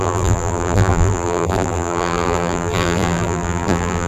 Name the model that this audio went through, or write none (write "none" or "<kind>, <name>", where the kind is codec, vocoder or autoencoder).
vocoder, BigVGAN v2